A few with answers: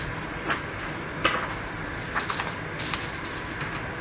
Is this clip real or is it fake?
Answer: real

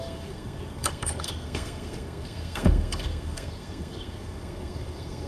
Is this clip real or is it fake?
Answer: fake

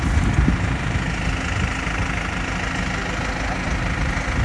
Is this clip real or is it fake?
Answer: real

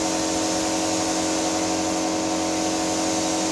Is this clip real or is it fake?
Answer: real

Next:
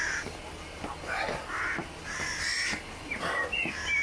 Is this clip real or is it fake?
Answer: real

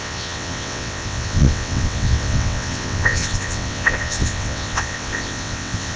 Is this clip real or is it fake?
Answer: fake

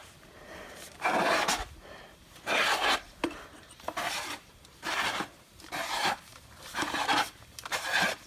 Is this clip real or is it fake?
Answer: fake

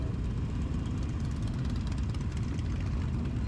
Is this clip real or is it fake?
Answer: fake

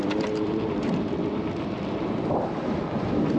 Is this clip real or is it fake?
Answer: fake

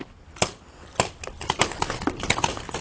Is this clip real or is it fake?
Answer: real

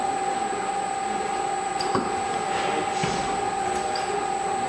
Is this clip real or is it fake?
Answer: real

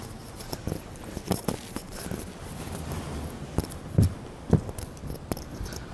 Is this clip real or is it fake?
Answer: real